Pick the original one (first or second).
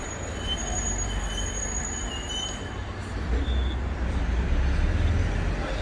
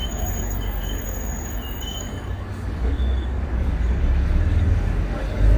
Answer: first